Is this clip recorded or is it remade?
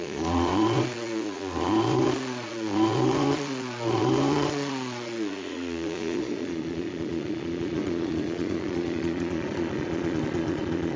remade